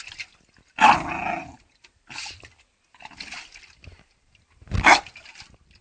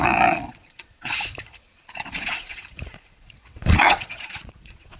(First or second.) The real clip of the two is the first